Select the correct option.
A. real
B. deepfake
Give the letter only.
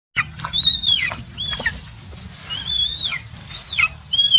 A